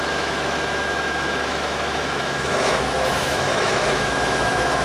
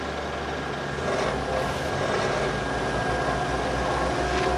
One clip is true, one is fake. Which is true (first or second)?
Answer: second